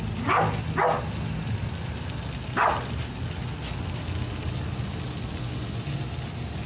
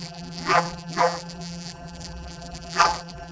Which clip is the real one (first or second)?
first